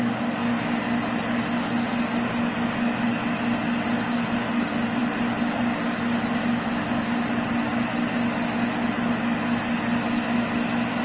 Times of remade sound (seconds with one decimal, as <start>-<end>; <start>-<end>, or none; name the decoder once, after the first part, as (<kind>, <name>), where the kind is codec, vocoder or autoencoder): none